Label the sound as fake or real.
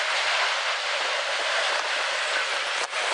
real